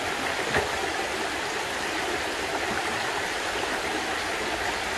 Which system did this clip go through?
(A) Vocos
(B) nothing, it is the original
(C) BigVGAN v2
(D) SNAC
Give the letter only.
B